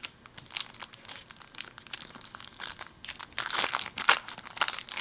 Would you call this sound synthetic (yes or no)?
no